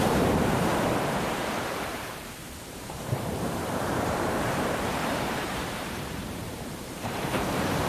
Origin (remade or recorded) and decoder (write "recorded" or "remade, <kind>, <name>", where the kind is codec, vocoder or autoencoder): remade, vocoder, BigVGAN v2